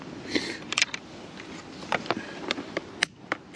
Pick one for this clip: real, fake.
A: real